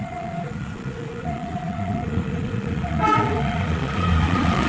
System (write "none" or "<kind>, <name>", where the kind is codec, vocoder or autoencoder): vocoder, Vocos